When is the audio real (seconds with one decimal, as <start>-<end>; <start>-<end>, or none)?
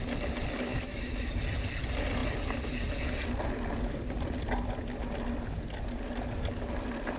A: 0.0-0.7; 1.3-7.2